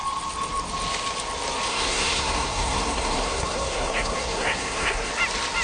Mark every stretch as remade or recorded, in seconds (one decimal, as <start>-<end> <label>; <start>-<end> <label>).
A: 0.0-1.7 recorded; 1.7-5.1 remade; 5.1-5.6 recorded